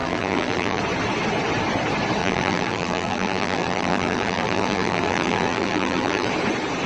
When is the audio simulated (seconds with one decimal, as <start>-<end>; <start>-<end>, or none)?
0.0-0.8; 2.2-6.3